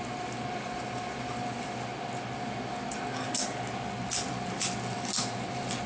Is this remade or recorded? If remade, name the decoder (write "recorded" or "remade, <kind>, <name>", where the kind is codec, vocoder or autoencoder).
recorded